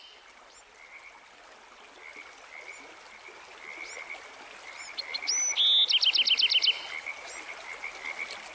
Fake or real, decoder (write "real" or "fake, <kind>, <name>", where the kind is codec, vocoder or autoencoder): real